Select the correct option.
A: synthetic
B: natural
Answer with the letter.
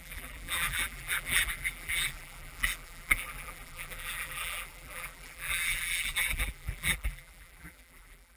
A